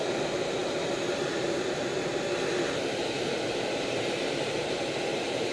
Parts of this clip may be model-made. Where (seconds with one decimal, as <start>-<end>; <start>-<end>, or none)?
none

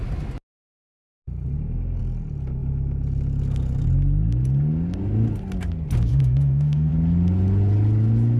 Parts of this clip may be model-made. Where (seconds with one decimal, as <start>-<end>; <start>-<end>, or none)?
6.1-6.9

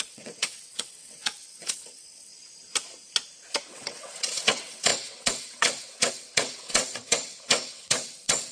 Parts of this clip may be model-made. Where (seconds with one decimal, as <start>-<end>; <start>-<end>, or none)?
0.0-2.3; 3.7-8.5

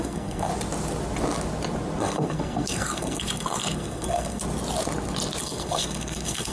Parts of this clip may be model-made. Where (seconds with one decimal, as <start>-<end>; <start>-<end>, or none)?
0.0-0.5; 2.0-4.4; 5.4-6.5